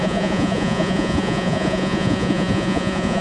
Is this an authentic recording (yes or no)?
no